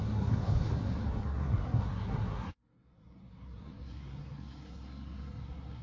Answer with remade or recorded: remade